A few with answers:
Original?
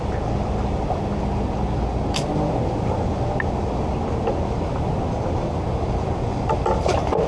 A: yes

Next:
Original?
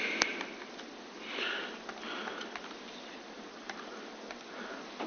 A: yes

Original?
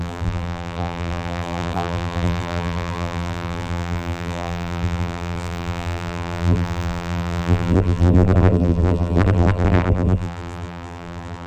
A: no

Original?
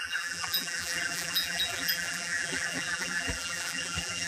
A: no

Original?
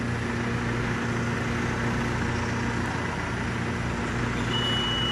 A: yes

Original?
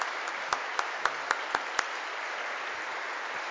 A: yes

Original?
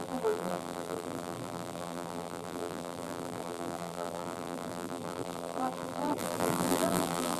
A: no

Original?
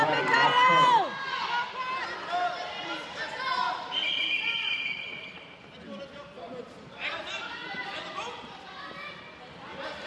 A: no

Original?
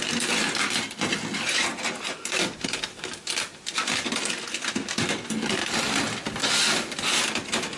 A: yes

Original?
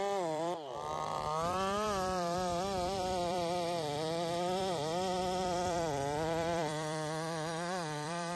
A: no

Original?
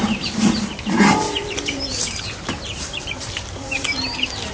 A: no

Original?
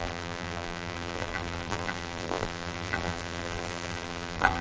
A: no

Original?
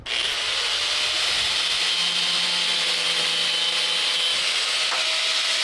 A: yes